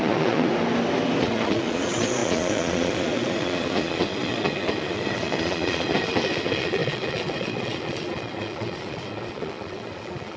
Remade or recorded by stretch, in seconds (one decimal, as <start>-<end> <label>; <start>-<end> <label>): 0.0-0.5 remade; 0.5-1.2 recorded; 1.2-10.4 remade